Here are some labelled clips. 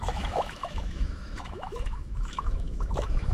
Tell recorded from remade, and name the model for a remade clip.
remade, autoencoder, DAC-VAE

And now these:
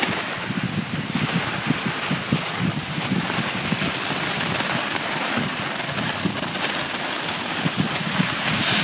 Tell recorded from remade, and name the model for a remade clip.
recorded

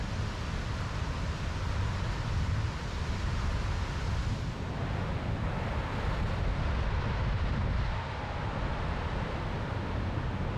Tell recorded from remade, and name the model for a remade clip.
recorded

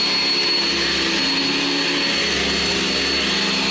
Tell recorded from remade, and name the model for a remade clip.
recorded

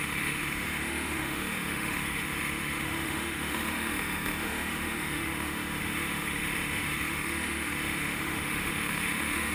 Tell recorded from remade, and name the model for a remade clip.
remade, autoencoder, DAC-VAE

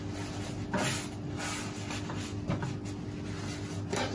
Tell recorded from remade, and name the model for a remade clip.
recorded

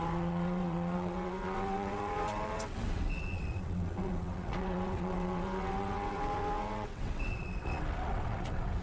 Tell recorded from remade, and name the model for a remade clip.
remade, vocoder, WaveNeXt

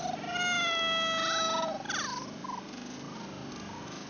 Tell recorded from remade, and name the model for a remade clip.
recorded